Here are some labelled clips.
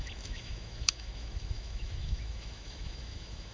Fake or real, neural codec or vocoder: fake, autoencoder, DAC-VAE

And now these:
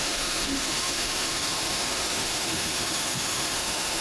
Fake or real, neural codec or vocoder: fake, autoencoder, DAC-VAE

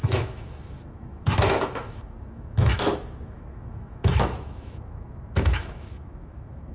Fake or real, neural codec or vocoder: fake, autoencoder, DAC-VAE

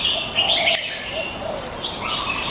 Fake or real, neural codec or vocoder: real